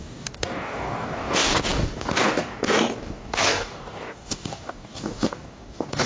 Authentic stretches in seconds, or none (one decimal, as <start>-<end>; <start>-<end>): none